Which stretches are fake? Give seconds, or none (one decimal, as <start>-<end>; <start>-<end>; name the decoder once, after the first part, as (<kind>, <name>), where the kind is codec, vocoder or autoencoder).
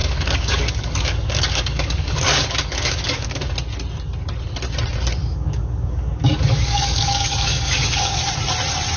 0.0-3.5 (codec, DAC); 5.2-8.2